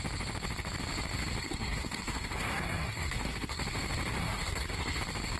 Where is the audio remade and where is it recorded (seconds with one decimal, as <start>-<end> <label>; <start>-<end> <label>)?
0.0-1.4 recorded; 1.4-3.6 remade; 3.6-4.2 recorded; 4.2-5.0 remade; 5.0-5.4 recorded